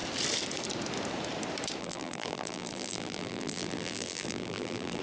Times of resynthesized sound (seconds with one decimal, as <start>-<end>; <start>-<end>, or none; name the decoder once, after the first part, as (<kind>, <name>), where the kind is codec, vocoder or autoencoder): 1.8-5.0 (vocoder, BigVGAN v2)